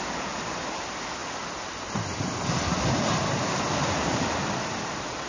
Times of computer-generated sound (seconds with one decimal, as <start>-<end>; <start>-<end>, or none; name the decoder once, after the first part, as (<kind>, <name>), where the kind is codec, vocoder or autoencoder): none